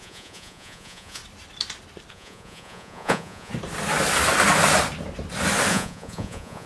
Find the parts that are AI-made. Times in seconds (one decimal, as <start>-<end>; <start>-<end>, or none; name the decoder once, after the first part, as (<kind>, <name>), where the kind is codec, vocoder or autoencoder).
0.0-1.2 (vocoder, Vocos); 2.1-3.5; 5.7-6.7